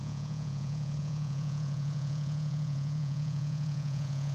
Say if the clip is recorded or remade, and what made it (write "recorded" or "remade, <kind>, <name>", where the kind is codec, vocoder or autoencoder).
remade, vocoder, Vocos